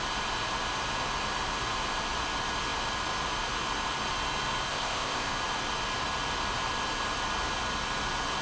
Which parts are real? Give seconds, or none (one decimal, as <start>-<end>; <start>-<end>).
0.0-4.7; 5.3-8.4